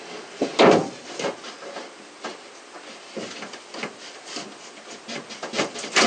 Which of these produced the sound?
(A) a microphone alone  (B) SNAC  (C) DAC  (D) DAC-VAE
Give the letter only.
A